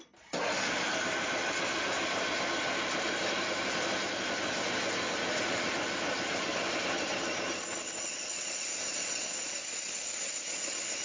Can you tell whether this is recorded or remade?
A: recorded